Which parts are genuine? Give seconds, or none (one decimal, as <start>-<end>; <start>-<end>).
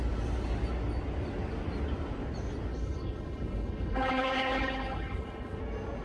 0.0-2.7; 5.6-6.0